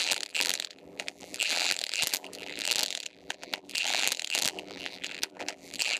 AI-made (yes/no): yes